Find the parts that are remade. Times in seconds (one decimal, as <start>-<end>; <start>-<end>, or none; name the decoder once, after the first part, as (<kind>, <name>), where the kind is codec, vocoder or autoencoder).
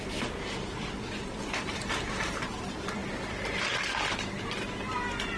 none